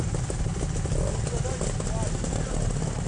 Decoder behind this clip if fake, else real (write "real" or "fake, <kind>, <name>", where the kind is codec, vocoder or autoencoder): real